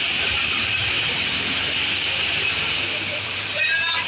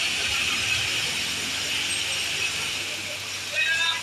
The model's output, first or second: first